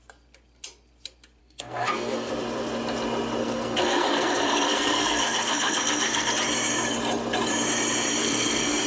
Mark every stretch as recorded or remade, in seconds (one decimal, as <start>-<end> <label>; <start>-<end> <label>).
0.0-1.4 recorded; 1.4-2.3 remade; 2.3-3.4 recorded; 3.4-6.3 remade; 6.3-8.2 recorded; 8.2-8.9 remade